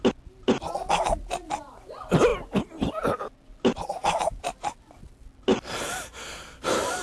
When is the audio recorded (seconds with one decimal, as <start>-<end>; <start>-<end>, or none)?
0.0-3.7; 4.4-5.5; 6.2-7.0